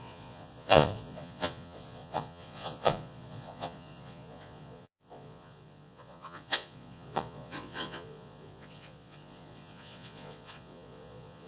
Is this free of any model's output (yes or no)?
no